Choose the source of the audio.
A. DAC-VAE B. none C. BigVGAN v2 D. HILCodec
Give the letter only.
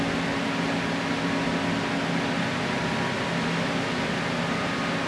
B